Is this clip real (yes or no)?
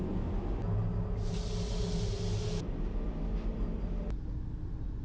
yes